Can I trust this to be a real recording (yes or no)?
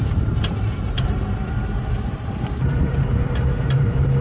no